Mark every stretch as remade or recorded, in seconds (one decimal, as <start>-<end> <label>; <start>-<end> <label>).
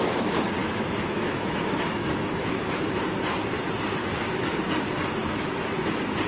0.0-0.6 recorded; 0.6-3.0 remade; 3.0-4.0 recorded; 4.0-4.6 remade; 4.6-5.2 recorded; 5.2-5.8 remade; 5.8-6.3 recorded